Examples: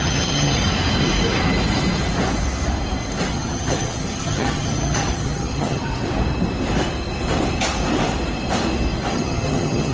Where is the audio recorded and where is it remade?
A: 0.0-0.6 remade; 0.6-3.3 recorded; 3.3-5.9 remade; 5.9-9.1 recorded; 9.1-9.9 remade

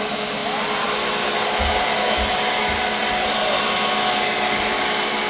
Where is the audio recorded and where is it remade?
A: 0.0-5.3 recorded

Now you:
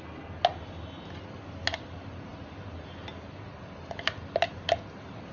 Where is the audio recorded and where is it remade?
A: 0.0-5.3 recorded

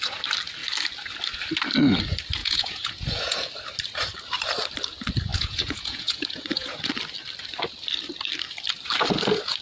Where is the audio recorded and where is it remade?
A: 0.0-2.4 recorded; 2.4-3.5 remade; 3.5-5.3 recorded; 5.3-6.8 remade; 6.8-9.6 recorded

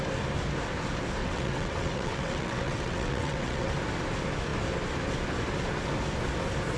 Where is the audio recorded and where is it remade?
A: 0.0-1.2 recorded; 1.2-3.7 remade; 3.7-6.8 recorded

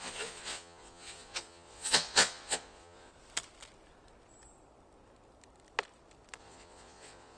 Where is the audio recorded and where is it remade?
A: 0.0-3.1 remade; 3.1-6.4 recorded; 6.4-7.4 remade

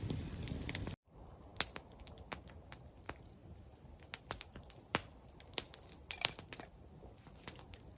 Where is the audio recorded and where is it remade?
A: 0.0-1.5 remade; 1.5-2.4 recorded; 2.4-3.4 remade; 3.4-4.2 recorded; 4.2-8.0 remade